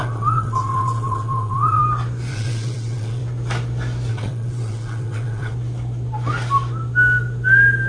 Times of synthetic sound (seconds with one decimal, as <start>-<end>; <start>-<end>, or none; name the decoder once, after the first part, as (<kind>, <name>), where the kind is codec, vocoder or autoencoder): 0.0-1.8 (vocoder, WaveNeXt); 2.3-3.2; 4.1-5.5